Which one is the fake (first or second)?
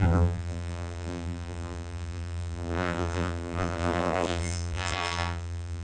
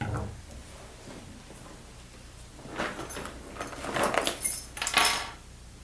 first